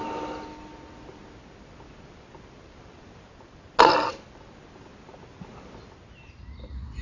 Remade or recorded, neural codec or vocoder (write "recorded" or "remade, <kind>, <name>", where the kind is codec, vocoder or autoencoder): recorded